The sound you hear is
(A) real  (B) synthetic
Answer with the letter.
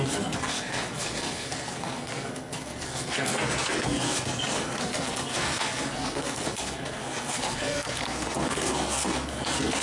B